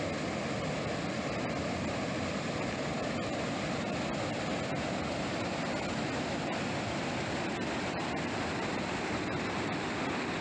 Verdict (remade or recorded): recorded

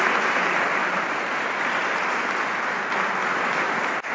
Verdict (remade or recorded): recorded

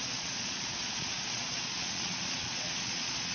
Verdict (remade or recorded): remade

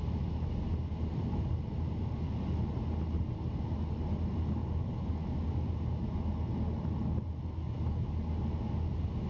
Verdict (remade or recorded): recorded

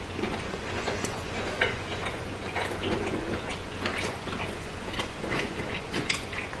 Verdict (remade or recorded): remade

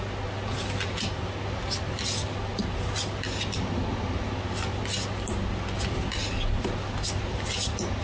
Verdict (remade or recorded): recorded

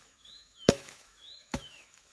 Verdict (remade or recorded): remade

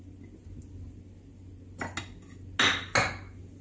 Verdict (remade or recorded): recorded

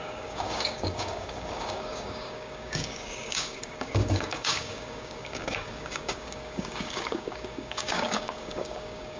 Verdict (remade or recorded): remade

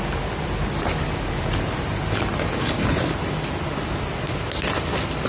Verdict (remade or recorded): recorded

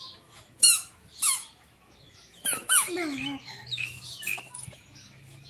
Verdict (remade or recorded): remade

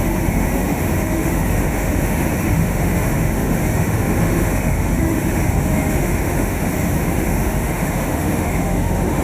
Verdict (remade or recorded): remade